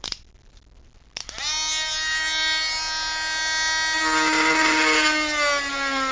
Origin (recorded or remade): recorded